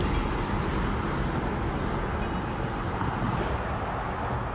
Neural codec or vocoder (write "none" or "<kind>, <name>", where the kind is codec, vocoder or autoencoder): none